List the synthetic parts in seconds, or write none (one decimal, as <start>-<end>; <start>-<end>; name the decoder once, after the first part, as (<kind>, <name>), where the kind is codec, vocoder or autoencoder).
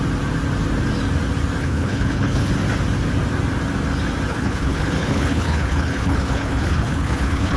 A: 1.6-2.5 (codec, HILCodec); 4.3-7.6